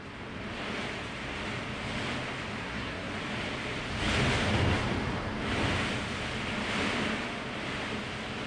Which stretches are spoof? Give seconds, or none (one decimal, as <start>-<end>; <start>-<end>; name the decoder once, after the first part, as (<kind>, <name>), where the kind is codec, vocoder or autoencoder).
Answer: 2.6-3.1 (codec, SNAC)